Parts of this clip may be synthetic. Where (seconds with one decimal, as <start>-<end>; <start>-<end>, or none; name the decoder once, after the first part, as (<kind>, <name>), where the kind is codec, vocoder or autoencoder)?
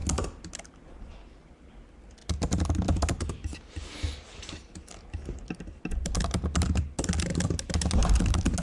none